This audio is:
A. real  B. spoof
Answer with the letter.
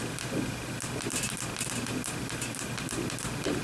A